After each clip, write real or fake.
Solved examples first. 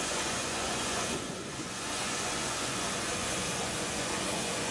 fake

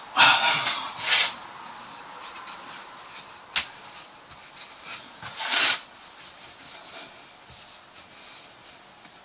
real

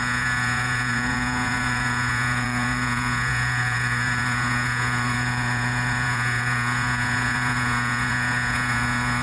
fake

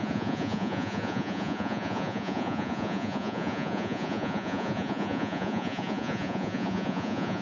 fake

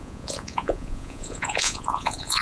fake